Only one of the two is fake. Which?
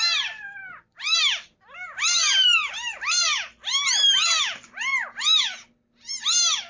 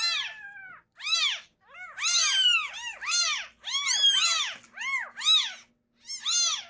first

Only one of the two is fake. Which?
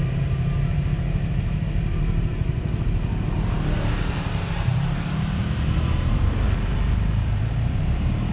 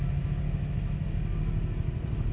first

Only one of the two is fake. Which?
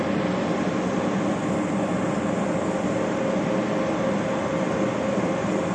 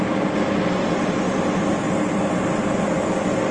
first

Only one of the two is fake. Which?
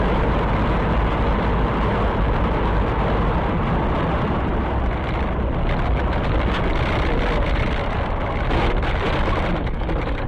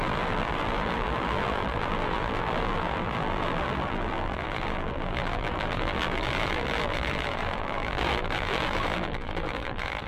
second